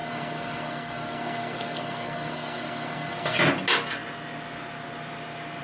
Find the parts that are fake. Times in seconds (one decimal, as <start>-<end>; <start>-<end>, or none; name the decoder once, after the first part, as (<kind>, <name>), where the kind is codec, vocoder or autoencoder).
0.0-3.4 (codec, SNAC)